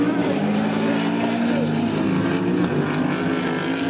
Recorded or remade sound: recorded